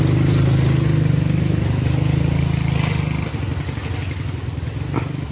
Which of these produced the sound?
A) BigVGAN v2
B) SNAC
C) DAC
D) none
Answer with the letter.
D